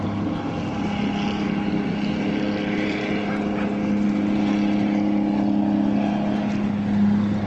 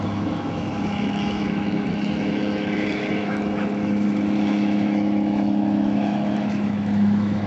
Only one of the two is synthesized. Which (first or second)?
second